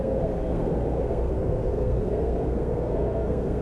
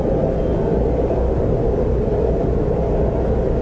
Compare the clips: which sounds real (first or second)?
second